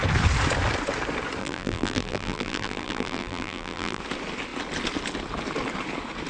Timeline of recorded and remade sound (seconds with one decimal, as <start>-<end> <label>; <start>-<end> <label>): 0.0-1.4 recorded; 1.4-4.0 remade; 4.0-6.3 recorded